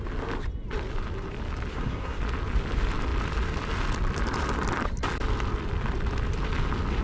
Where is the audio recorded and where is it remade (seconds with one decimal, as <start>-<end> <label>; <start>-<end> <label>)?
0.0-1.7 recorded; 1.7-2.2 remade; 2.2-7.0 recorded